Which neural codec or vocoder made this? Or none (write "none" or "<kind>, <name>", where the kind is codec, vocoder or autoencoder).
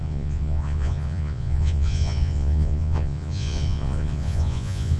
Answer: vocoder, Vocos